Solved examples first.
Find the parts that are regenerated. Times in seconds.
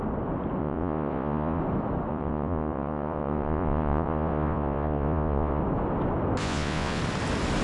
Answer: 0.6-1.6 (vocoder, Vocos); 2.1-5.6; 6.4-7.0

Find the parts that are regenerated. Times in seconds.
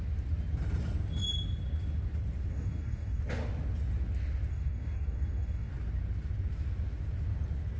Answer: 2.5-3.2 (codec, DAC); 4.5-5.7